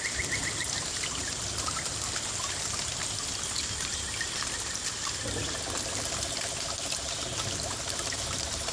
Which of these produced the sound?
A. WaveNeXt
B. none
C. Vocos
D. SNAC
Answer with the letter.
B